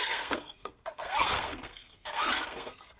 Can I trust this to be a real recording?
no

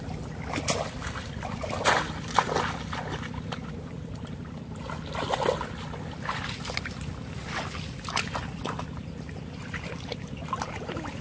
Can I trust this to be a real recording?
yes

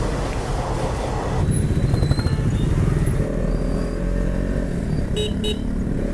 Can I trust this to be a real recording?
yes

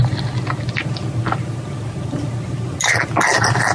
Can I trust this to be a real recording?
yes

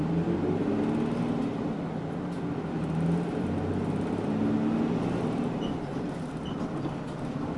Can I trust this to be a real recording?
yes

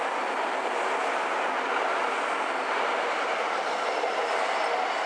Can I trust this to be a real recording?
yes